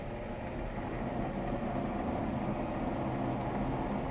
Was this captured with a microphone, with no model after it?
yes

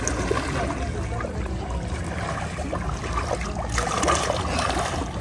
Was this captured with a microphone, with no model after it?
yes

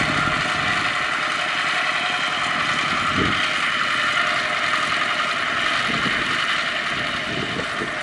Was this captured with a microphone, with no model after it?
yes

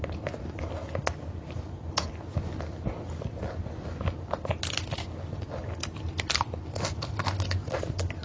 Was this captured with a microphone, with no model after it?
yes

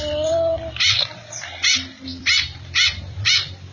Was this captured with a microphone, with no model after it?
no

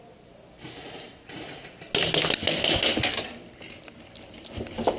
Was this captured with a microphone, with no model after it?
yes